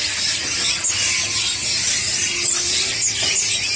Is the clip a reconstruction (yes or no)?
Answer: no